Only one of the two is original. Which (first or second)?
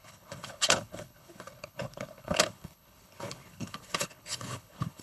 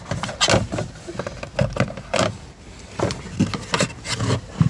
second